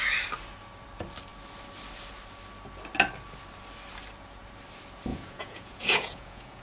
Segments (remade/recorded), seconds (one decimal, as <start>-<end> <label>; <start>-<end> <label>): 0.0-5.1 recorded; 5.1-6.6 remade